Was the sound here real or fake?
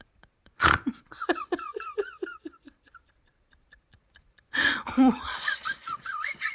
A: fake